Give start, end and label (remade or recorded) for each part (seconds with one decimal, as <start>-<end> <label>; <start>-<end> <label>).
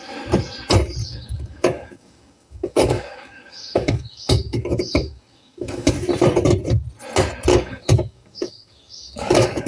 0.0-1.0 recorded; 1.0-5.9 remade; 5.9-7.5 recorded; 7.5-9.7 remade